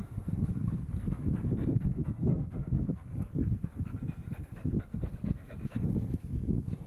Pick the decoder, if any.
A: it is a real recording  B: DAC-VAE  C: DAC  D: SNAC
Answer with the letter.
D